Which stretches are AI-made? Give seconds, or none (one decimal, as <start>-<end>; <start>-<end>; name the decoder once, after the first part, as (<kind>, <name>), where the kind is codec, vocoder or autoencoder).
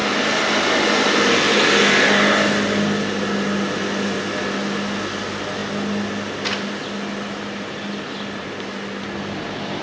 none